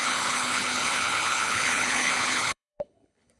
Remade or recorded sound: remade